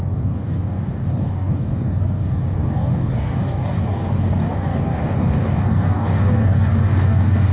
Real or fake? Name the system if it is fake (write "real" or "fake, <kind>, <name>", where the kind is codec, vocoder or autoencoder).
fake, codec, DAC